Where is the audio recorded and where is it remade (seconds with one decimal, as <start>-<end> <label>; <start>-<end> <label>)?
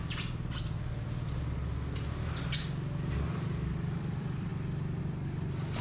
0.0-3.5 recorded; 3.5-4.5 remade; 4.5-5.0 recorded; 5.0-5.8 remade